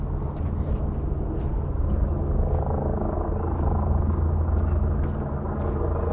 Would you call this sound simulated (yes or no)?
no